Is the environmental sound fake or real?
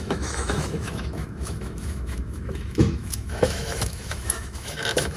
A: fake